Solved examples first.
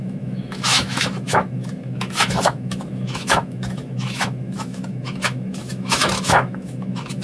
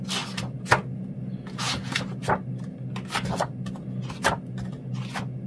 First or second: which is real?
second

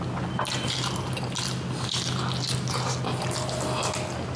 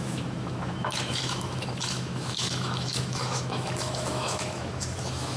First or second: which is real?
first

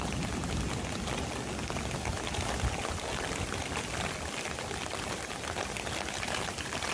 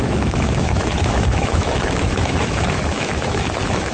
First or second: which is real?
first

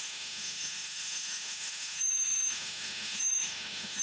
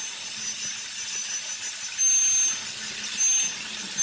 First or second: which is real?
second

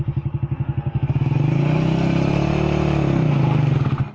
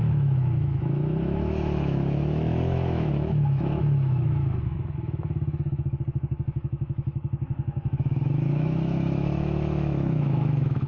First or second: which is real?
first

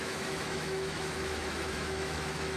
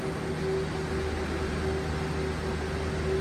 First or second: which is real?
second